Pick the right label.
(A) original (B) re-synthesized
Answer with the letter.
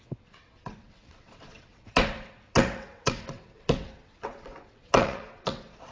B